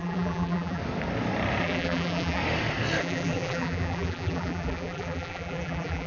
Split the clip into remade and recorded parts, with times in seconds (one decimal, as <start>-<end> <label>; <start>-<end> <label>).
0.0-0.8 remade; 0.8-1.6 recorded; 1.6-2.4 remade; 2.4-3.0 recorded; 3.0-6.1 remade